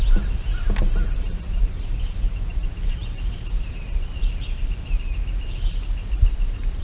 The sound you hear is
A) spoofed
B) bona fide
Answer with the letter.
B